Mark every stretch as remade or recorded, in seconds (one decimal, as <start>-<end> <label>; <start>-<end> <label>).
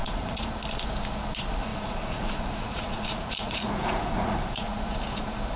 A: 0.0-0.5 remade; 0.5-1.7 recorded; 1.7-4.8 remade; 4.8-5.6 recorded